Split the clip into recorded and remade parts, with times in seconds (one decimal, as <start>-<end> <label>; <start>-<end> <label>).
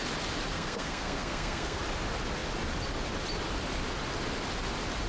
0.0-0.5 recorded; 0.5-1.8 remade; 1.8-5.1 recorded